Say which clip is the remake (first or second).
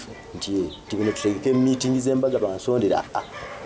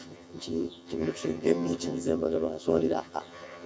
second